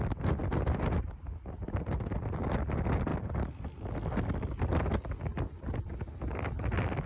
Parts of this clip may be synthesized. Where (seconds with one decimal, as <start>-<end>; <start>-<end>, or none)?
0.4-2.3; 3.1-3.8; 5.3-5.9